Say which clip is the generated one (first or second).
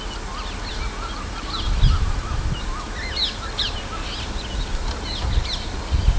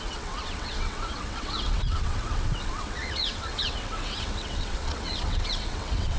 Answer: second